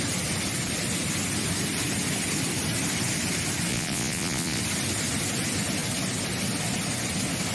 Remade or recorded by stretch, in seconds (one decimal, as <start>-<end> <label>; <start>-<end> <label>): 0.0-3.7 recorded; 3.7-4.6 remade; 4.6-7.5 recorded